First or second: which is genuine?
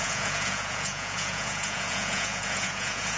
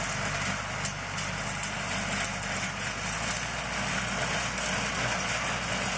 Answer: second